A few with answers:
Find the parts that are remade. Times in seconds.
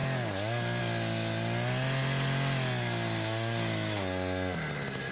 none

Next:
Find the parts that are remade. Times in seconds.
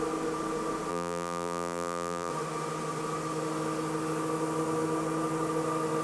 0.9-2.3 (vocoder, BigVGAN v2)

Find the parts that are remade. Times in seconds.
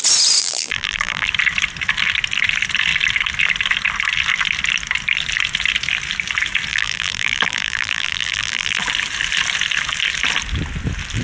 0.4-1.3 (vocoder, BigVGAN v2); 6.7-8.8